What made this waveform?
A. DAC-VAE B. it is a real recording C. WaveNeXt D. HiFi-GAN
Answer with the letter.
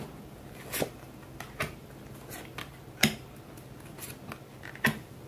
B